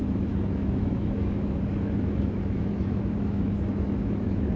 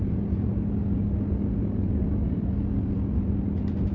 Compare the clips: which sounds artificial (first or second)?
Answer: first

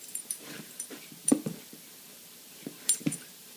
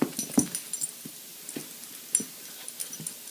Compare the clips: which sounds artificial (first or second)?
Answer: first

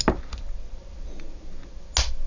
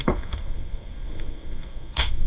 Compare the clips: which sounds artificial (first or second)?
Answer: second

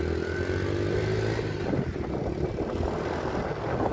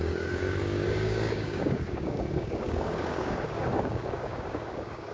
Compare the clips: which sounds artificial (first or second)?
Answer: second